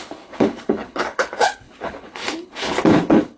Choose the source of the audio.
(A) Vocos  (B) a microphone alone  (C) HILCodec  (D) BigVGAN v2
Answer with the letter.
C